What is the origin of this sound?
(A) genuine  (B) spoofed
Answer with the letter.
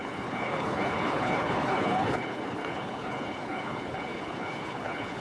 B